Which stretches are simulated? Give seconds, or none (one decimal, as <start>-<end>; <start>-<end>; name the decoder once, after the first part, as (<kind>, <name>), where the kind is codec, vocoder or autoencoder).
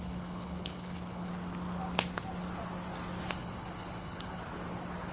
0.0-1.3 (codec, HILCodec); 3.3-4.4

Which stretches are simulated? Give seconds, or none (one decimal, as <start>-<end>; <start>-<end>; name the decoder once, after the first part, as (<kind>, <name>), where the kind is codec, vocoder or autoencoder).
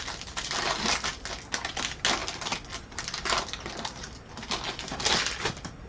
none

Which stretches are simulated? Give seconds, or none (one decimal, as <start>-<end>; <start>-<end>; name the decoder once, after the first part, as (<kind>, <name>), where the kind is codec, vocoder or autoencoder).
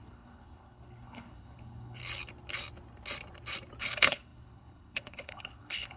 0.0-2.0 (codec, HILCodec); 3.8-6.0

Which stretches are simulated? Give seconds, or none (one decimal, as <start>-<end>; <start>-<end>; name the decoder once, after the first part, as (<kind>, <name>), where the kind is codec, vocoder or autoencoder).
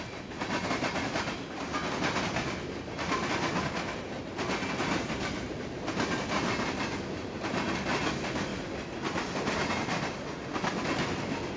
none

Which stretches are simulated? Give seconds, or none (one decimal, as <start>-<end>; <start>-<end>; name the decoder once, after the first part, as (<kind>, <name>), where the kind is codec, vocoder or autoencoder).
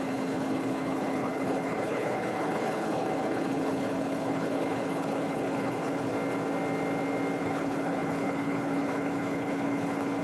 0.0-6.1 (codec, HILCodec); 7.4-10.2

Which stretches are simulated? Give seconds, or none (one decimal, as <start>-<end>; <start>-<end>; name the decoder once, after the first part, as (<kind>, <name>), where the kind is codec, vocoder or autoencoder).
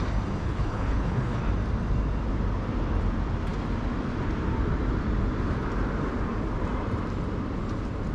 0.4-1.4 (codec, HILCodec)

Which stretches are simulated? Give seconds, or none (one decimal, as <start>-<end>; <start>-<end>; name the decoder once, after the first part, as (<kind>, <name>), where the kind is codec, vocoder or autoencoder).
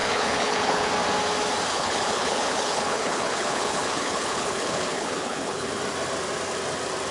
0.0-0.9 (codec, HILCodec); 1.7-5.8